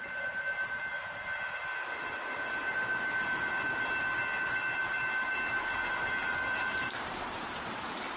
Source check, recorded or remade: recorded